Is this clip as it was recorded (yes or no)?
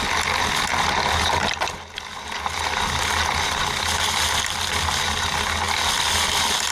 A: yes